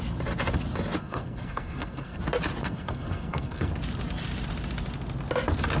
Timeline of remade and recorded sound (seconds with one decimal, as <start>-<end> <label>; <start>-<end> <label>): 0.0-1.0 recorded; 1.0-2.2 remade; 2.2-2.6 recorded; 2.6-3.7 remade; 3.7-5.8 recorded

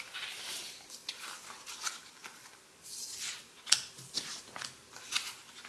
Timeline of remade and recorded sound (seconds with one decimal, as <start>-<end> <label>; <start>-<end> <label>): 0.0-5.7 recorded

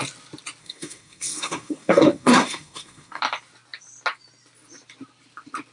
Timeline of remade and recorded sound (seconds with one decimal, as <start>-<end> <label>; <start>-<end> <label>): 0.0-0.6 recorded; 0.6-3.2 remade; 3.2-5.7 recorded

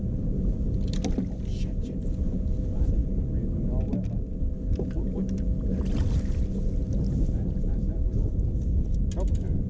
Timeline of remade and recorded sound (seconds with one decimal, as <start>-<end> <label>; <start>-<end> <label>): 0.0-9.7 recorded

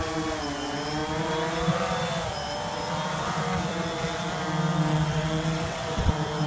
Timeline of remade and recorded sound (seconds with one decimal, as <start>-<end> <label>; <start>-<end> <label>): 0.0-4.9 recorded; 4.9-6.1 remade; 6.1-6.5 recorded

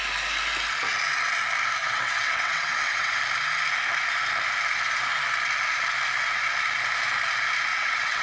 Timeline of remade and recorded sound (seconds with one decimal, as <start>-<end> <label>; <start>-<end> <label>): 0.0-1.8 recorded; 1.8-3.2 remade; 3.2-7.7 recorded; 7.7-8.2 remade

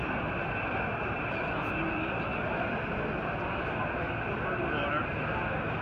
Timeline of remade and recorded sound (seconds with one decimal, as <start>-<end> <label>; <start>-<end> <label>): 0.0-5.8 recorded